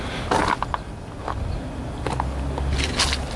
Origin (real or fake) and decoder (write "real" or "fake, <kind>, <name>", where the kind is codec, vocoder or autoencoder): real